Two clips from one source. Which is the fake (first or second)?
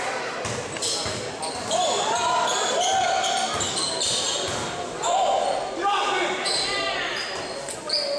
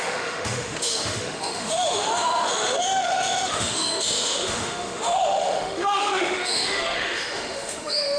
second